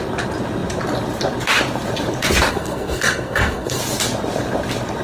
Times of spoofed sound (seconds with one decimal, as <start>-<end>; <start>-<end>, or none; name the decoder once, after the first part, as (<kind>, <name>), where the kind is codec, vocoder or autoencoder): 2.5-3.8 (codec, SNAC)